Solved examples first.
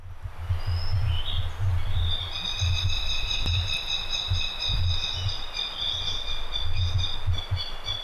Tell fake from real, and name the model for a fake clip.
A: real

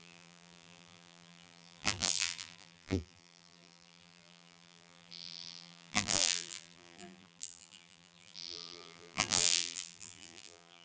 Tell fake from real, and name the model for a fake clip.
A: fake, vocoder, BigVGAN v2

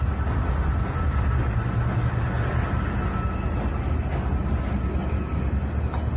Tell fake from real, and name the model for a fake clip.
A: real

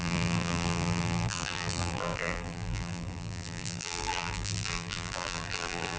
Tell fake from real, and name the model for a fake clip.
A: fake, vocoder, BigVGAN v2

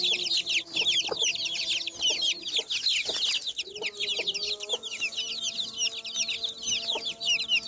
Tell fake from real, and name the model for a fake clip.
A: real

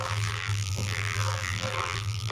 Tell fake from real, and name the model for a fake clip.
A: fake, vocoder, BigVGAN v2